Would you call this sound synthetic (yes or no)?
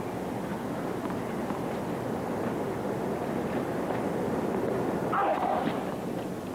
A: no